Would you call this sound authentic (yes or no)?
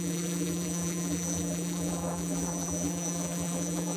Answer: no